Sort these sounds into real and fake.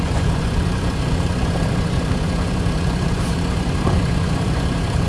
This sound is fake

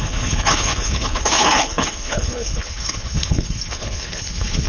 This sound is fake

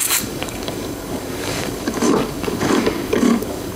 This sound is fake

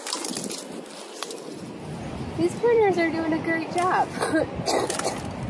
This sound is real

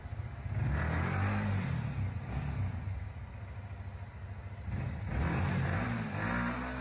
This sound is real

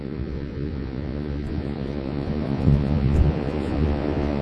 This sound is fake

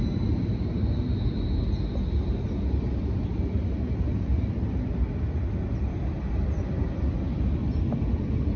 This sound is real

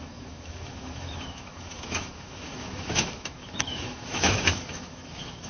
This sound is fake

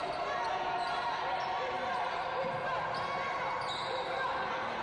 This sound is real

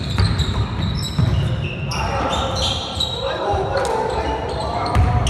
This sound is real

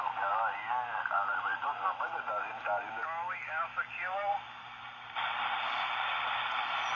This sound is real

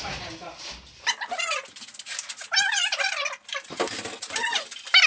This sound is real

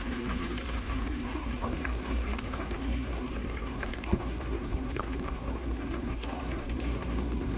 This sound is fake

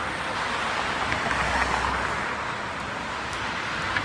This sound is real